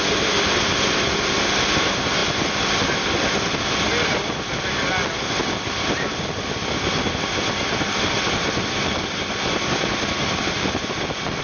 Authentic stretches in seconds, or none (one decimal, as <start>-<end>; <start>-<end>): 0.0-11.4